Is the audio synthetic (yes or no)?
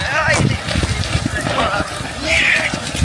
no